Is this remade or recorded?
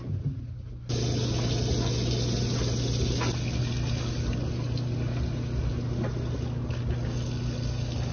recorded